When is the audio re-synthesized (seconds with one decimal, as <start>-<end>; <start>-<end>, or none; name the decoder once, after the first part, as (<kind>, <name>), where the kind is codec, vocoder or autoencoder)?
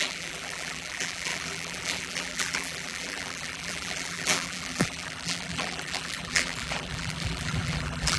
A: 0.0-8.2 (vocoder, BigVGAN v2)